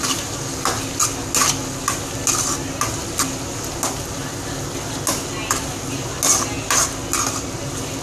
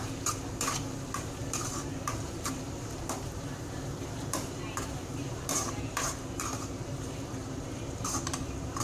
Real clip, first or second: first